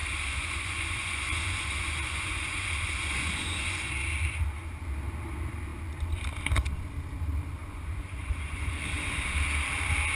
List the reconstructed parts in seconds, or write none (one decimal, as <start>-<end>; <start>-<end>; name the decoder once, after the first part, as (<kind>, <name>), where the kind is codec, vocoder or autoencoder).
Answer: 0.0-3.9 (vocoder, Vocos); 7.6-9.2